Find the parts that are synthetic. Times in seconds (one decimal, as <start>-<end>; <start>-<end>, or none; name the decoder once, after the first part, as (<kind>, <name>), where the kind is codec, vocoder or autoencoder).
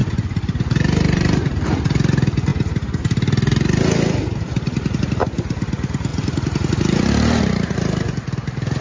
0.0-1.7 (vocoder, BigVGAN v2)